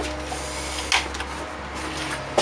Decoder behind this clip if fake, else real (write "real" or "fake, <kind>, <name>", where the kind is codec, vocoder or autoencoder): real